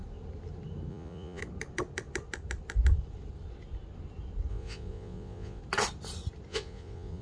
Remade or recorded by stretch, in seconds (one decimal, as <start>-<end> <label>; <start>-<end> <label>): 0.0-0.9 recorded; 0.9-1.4 remade; 1.4-4.5 recorded; 4.5-5.6 remade; 5.6-6.5 recorded; 6.5-7.2 remade